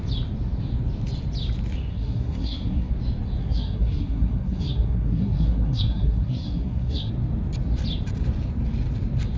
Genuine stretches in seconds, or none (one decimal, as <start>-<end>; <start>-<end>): 0.0-1.9; 2.9-3.4; 7.1-9.4